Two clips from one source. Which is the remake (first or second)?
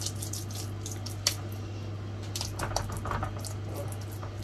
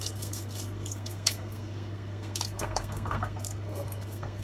second